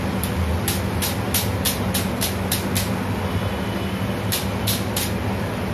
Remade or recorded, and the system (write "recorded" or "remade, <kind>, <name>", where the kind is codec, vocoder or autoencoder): recorded